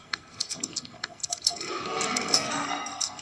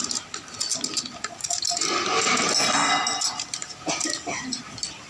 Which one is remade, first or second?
first